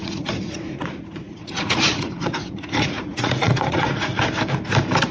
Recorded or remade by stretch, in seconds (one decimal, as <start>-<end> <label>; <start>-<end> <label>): 0.0-4.1 remade; 4.1-5.1 recorded